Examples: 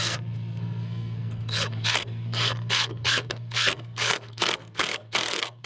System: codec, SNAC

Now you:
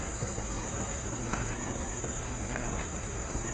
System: codec, SNAC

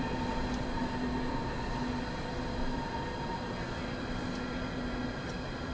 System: none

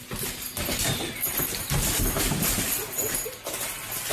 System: none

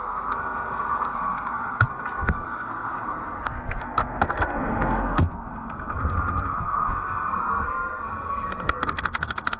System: codec, SNAC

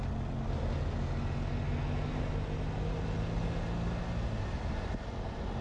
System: none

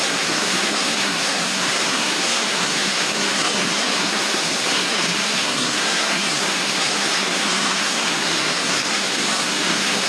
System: codec, SNAC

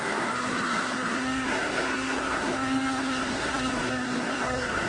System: codec, SNAC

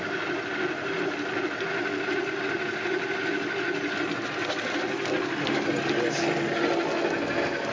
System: none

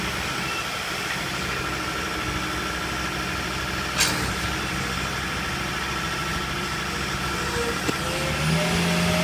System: none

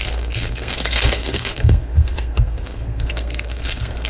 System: codec, SNAC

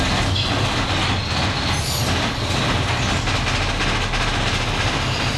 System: none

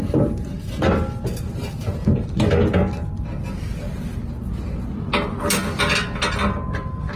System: none